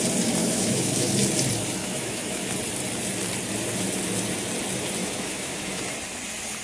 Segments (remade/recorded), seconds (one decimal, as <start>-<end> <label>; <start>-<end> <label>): 0.0-0.4 recorded; 0.4-1.1 remade; 1.1-1.8 recorded; 1.8-2.5 remade; 2.5-5.0 recorded; 5.0-5.8 remade; 5.8-6.6 recorded